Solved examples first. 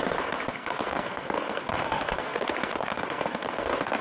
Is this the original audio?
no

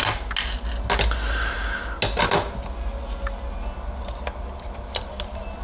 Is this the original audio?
yes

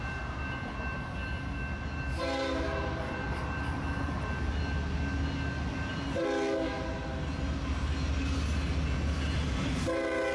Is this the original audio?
yes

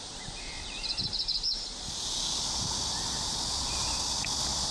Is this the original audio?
yes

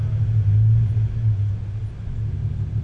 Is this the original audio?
yes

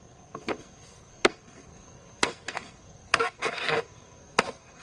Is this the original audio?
no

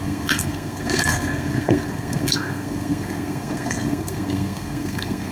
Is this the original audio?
no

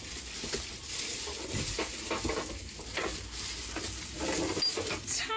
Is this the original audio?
yes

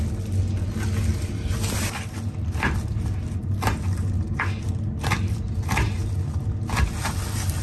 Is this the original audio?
yes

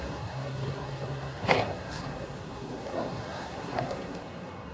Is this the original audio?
no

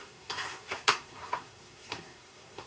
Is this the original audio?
no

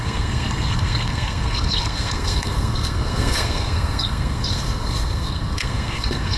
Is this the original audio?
no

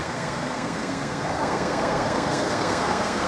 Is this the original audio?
no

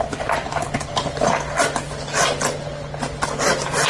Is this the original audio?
yes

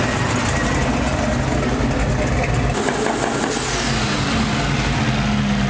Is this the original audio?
yes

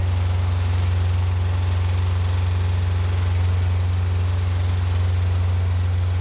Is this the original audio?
yes